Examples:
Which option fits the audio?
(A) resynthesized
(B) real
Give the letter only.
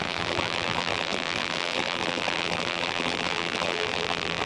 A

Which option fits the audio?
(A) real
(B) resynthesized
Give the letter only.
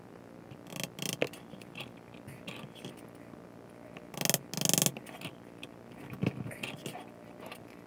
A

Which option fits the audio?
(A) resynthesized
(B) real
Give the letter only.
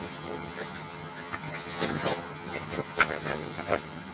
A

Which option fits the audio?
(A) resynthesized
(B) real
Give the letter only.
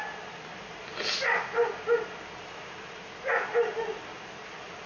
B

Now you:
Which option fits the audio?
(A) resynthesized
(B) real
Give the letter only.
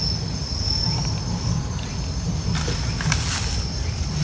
B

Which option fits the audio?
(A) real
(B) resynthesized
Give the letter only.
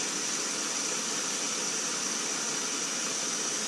A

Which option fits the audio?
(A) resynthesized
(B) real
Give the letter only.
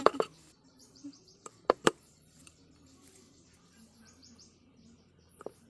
A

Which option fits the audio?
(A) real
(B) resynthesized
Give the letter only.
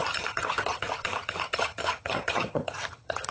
B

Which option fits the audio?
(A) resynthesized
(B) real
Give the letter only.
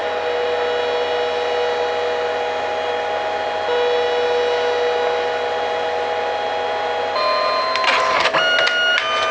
B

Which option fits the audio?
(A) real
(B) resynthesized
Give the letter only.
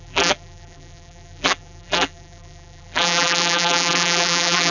B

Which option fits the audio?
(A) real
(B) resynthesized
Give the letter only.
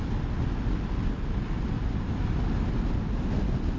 A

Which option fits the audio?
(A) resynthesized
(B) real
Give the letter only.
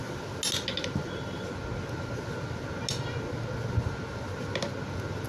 B